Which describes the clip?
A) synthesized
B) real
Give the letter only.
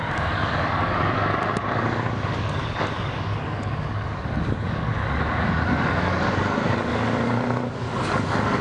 A